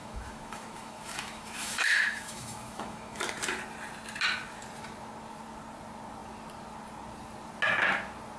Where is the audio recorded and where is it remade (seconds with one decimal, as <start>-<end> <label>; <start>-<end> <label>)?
0.0-3.2 remade; 3.2-8.4 recorded